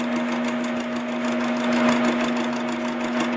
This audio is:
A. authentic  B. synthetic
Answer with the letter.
A